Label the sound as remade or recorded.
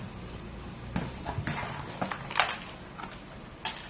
recorded